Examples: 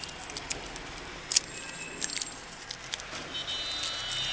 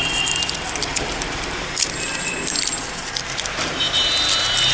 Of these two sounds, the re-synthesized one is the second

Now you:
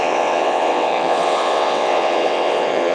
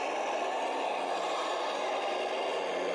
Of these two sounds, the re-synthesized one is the first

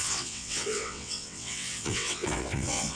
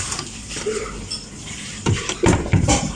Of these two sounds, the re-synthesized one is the first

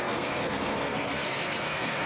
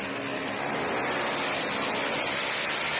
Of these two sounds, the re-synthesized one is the first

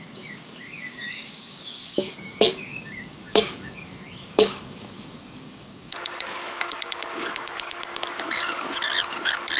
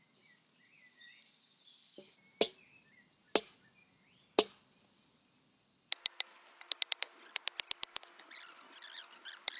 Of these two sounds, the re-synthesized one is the first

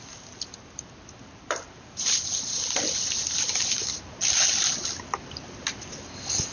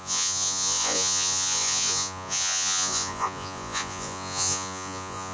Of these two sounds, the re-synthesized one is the second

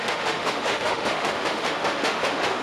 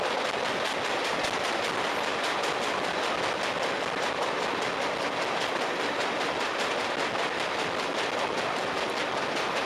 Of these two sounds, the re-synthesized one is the first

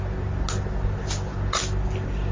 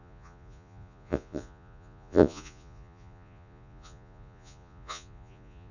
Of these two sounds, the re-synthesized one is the second